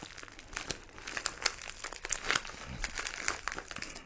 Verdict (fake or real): real